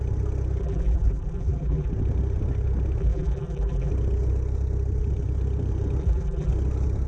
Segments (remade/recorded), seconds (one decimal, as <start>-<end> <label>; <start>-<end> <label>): 0.0-0.6 recorded; 0.6-1.9 remade; 1.9-3.0 recorded; 3.0-3.9 remade; 3.9-6.0 recorded; 6.0-6.5 remade; 6.5-7.1 recorded

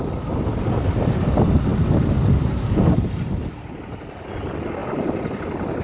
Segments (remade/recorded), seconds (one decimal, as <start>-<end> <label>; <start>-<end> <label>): 0.0-5.8 recorded

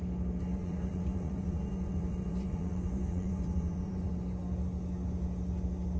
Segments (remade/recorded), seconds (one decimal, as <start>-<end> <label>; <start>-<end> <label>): 0.0-0.5 recorded; 0.5-4.1 remade; 4.1-6.0 recorded